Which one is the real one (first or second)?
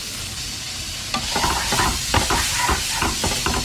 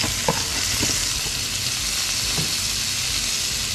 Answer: second